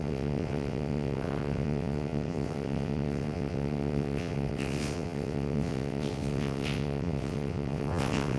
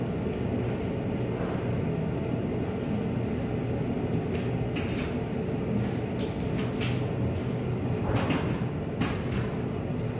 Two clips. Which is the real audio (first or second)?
second